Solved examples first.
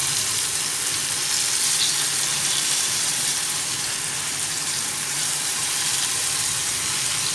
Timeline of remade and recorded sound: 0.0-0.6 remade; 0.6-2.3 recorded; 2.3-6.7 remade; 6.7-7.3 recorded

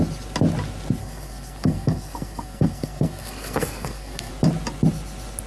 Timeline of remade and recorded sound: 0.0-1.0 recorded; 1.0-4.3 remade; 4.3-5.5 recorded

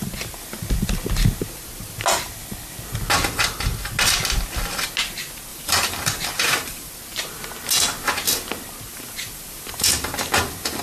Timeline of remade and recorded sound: 0.0-5.5 recorded; 5.5-6.9 remade; 6.9-8.9 recorded; 8.9-10.8 remade

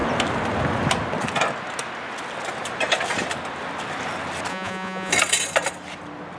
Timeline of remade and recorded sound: 0.0-4.5 recorded; 4.5-5.1 remade; 5.1-6.4 recorded

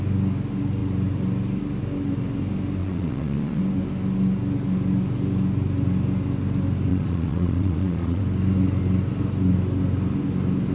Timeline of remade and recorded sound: 0.0-2.8 recorded; 2.8-3.6 remade; 3.6-6.9 recorded; 6.9-8.2 remade; 8.2-10.7 recorded